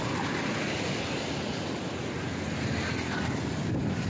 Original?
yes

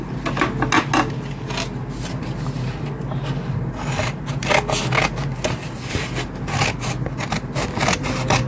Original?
yes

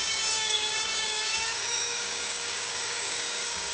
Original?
no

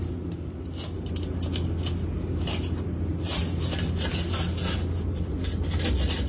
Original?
yes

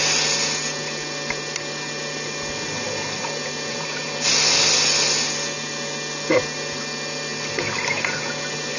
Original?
yes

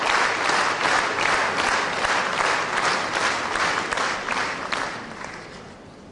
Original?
yes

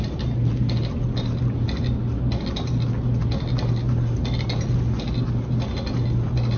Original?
yes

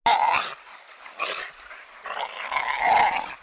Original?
yes